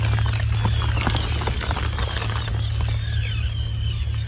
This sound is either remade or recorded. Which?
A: recorded